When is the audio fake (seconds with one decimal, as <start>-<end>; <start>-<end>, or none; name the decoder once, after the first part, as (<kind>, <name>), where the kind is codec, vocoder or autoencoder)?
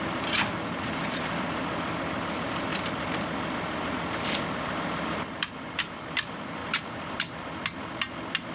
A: none